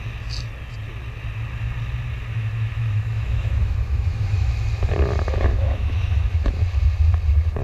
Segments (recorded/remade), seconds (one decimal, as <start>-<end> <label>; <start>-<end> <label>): 0.0-2.3 recorded; 2.3-4.5 remade; 4.5-5.5 recorded; 5.5-6.6 remade; 6.6-7.6 recorded